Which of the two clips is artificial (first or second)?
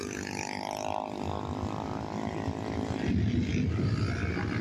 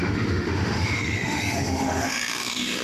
second